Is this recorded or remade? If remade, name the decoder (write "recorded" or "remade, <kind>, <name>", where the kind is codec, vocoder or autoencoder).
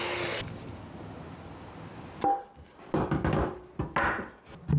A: recorded